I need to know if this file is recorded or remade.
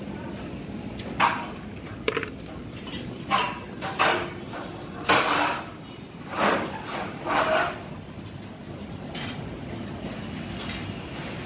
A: recorded